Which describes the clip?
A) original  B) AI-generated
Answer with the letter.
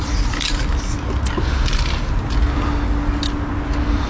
A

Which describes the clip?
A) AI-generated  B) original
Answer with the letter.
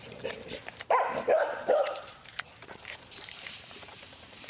A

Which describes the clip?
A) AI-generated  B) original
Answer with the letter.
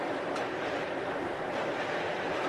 B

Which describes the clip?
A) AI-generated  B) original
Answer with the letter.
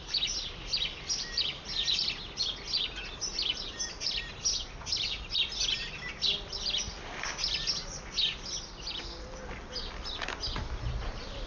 B